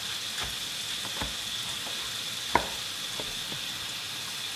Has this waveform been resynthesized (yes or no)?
no